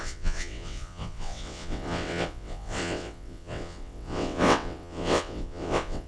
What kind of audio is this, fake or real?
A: fake